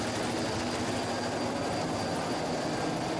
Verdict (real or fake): real